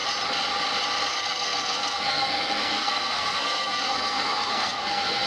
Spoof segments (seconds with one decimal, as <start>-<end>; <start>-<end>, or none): 1.1-5.3